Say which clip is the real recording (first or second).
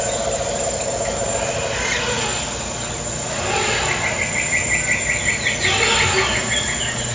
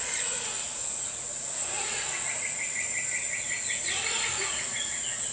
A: first